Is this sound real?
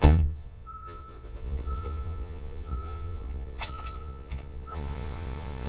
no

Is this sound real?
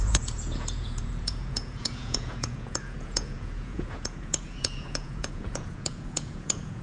no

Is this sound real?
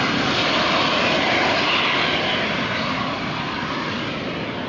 yes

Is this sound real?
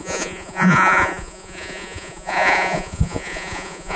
no